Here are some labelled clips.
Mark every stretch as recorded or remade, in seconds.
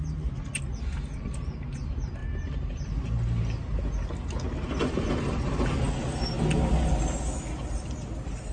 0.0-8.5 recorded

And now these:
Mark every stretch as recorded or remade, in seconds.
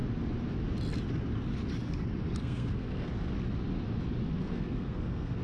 0.0-2.4 recorded; 2.4-3.3 remade; 3.3-4.4 recorded; 4.4-5.4 remade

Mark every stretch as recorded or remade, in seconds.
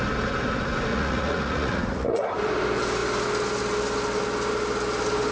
0.0-0.9 recorded; 0.9-2.3 remade; 2.3-5.3 recorded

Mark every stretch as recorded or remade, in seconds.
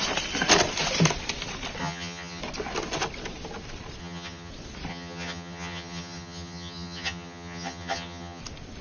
0.0-1.8 recorded; 1.8-2.4 remade; 2.4-4.0 recorded; 4.0-4.5 remade; 4.5-4.9 recorded; 4.9-8.4 remade; 8.4-8.8 recorded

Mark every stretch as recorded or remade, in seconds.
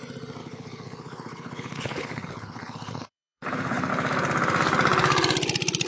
0.0-0.4 recorded; 0.4-3.9 remade; 3.9-5.9 recorded